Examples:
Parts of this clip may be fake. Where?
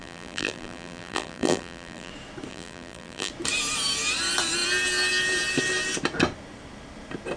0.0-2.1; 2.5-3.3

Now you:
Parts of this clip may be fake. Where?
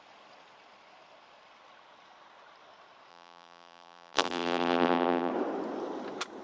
3.1-5.3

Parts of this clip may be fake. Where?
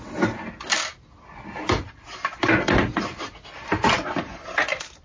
0.0-0.9; 3.0-5.0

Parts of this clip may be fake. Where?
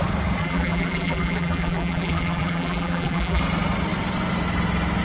0.4-3.4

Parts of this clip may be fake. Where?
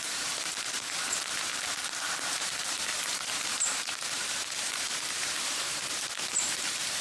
0.0-1.5; 2.2-7.0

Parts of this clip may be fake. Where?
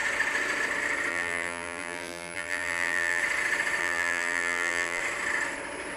1.1-3.2; 3.8-5.0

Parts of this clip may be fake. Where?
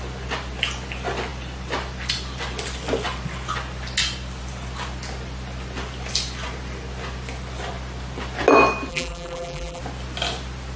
8.9-9.8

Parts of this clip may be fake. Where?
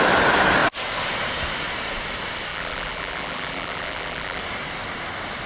2.5-4.4